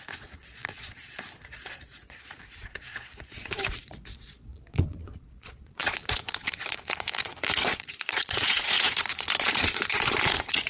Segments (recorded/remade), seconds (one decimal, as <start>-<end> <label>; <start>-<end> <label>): 0.0-10.7 remade